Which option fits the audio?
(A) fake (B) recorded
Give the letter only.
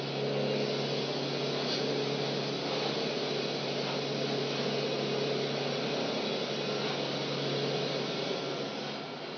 B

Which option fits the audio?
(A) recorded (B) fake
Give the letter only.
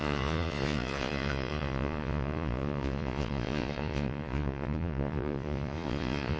B